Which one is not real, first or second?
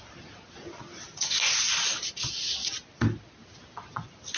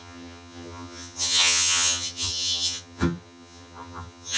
second